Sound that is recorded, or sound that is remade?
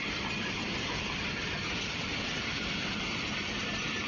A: recorded